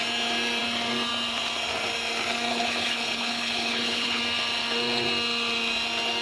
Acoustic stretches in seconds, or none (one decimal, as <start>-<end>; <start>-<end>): 0.0-2.5; 4.2-6.2